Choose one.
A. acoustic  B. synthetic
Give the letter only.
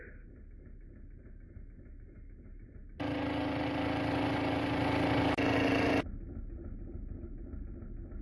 A